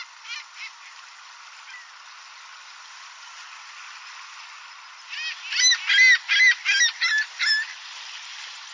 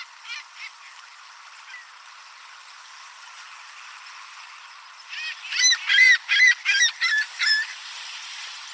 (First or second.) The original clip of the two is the first